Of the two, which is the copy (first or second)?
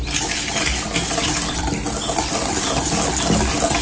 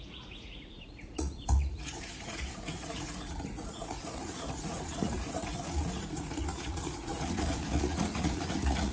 second